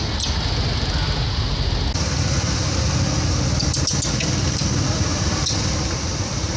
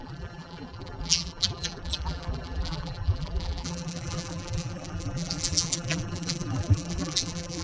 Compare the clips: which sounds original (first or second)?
first